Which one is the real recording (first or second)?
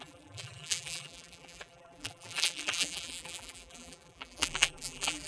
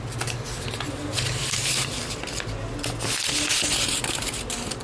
second